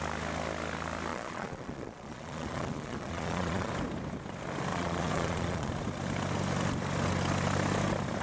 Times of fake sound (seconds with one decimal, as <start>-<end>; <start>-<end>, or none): 1.1-3.7; 4.7-5.7